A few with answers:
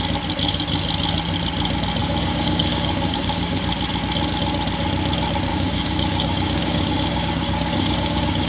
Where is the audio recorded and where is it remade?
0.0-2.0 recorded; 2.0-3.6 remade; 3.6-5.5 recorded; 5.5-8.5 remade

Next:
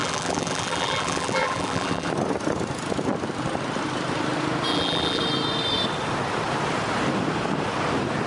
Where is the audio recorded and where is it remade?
0.0-2.1 remade; 2.1-4.7 recorded; 4.7-5.2 remade; 5.2-8.3 recorded

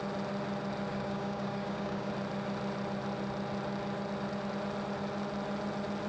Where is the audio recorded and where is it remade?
0.0-0.9 recorded; 0.9-2.1 remade; 2.1-6.1 recorded

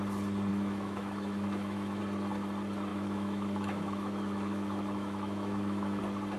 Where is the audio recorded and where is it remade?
0.0-0.5 recorded; 0.5-2.0 remade; 2.0-2.9 recorded; 2.9-6.0 remade; 6.0-6.4 recorded

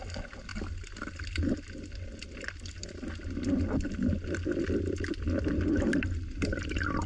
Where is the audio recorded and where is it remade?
0.0-7.1 recorded